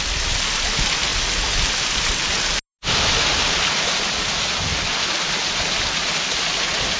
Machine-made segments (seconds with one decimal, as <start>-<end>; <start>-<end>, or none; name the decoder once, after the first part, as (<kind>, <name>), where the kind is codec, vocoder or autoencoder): none